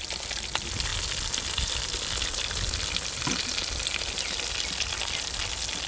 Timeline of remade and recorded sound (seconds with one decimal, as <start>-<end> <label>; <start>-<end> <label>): 0.0-5.9 recorded